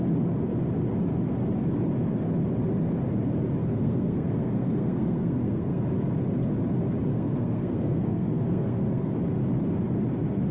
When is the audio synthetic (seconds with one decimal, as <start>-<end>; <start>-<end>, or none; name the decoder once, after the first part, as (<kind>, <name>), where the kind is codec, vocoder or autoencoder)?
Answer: 3.6-5.8 (codec, SNAC); 7.1-9.1